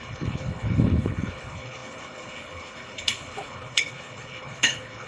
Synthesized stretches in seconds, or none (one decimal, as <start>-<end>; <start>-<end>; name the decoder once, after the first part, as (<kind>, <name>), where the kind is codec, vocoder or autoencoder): 0.0-5.1 (codec, HILCodec)

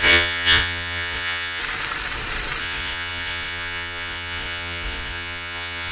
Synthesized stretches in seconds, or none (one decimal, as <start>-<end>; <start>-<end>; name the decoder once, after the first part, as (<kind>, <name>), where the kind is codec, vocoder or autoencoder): 0.0-1.6 (vocoder, Vocos); 2.6-5.9

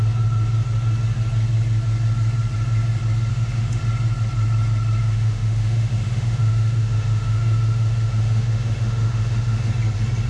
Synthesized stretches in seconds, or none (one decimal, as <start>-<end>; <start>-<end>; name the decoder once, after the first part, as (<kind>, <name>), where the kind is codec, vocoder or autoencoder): 3.3-3.8 (autoencoder, DAC-VAE); 5.0-9.7

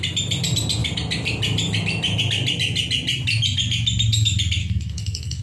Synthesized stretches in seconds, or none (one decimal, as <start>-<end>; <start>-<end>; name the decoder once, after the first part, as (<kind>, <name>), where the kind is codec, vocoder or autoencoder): 4.6-5.4 (codec, SNAC)

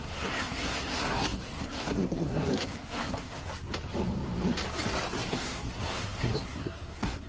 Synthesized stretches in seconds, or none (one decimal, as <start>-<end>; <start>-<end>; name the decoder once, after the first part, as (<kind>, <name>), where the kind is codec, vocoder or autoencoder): 0.0-3.4 (codec, SNAC); 5.3-7.3